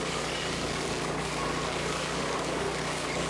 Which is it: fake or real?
fake